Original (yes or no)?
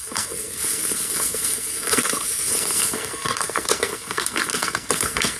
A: no